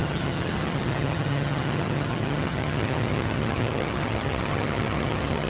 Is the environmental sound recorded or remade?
remade